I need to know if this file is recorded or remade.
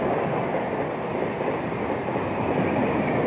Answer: recorded